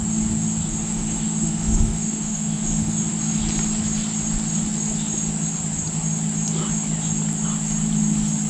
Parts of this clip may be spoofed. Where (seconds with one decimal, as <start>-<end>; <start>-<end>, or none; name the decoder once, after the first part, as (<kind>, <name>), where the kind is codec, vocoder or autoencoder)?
0.8-3.0 (autoencoder, DAC-VAE)